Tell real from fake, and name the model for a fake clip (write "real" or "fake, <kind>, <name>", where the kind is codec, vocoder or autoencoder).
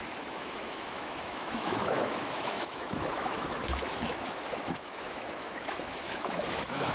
fake, autoencoder, DAC-VAE